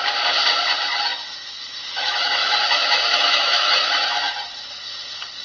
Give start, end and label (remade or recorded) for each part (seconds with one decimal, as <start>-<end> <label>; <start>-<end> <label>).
0.0-1.1 recorded; 1.1-4.3 remade; 4.3-5.4 recorded